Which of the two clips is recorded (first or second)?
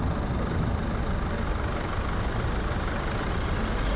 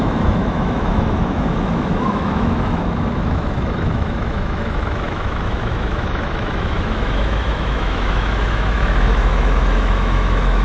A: first